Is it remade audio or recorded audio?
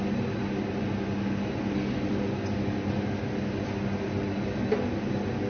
recorded